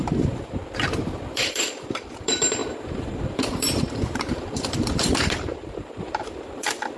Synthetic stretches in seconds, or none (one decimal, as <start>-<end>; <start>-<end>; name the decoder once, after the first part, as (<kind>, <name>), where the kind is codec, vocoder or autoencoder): 0.0-0.6 (vocoder, BigVGAN v2); 1.3-7.0